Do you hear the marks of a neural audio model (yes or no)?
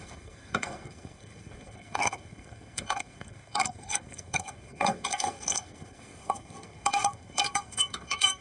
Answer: yes